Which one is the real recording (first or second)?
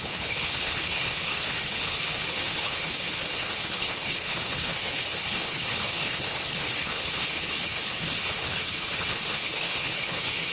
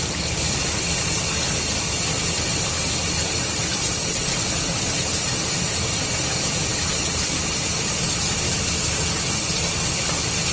second